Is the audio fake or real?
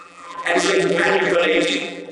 fake